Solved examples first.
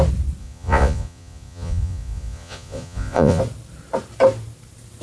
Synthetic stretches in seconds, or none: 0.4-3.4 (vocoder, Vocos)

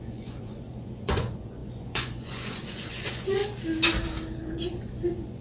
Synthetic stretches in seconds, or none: 0.0-3.4 (vocoder, Vocos); 4.4-5.4

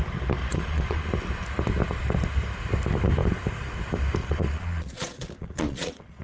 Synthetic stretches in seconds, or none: 0.4-1.1 (vocoder, Vocos); 4.2-6.2